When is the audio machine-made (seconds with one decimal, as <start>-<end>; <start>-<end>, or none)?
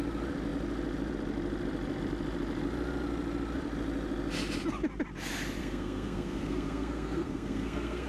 5.6-8.1